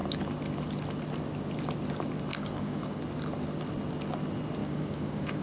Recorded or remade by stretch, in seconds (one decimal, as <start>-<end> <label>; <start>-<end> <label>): 0.0-2.3 recorded; 2.3-3.0 remade; 3.0-4.6 recorded; 4.6-5.4 remade